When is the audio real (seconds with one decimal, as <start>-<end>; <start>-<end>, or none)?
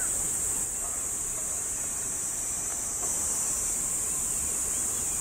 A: 0.0-1.4; 4.5-5.2